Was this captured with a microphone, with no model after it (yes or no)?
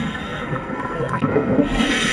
no